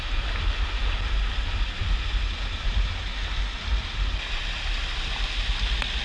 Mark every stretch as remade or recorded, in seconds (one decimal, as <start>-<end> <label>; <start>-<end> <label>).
0.0-6.0 recorded